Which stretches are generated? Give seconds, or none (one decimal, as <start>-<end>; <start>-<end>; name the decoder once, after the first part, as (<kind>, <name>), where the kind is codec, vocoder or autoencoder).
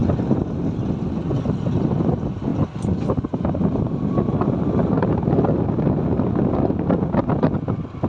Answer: none